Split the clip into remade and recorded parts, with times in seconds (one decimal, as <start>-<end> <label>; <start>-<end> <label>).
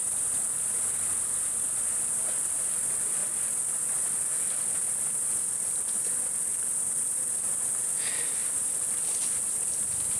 0.0-2.2 recorded; 2.2-10.2 remade